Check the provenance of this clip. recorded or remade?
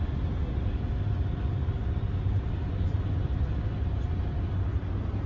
recorded